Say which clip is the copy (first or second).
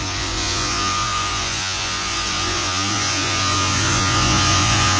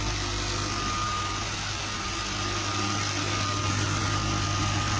first